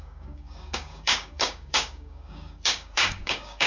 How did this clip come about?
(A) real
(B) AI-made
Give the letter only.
B